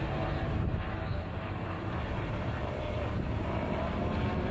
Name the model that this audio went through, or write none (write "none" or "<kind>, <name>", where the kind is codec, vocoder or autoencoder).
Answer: vocoder, BigVGAN v2